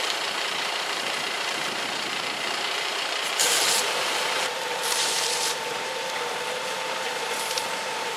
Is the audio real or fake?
fake